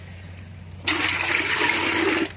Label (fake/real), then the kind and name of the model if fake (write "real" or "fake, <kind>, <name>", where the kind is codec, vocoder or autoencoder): real